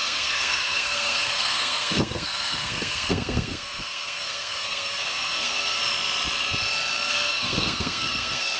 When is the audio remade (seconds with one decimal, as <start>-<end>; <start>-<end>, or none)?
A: 0.0-5.8; 7.1-8.6

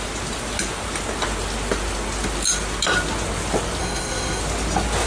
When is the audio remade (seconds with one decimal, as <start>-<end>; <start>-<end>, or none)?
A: 3.8-4.4